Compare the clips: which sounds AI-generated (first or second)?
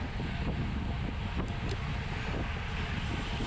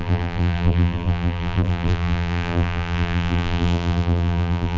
second